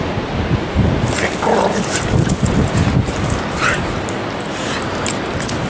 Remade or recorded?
recorded